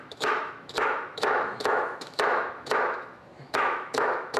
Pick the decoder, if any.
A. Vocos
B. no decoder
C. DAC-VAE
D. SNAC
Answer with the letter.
C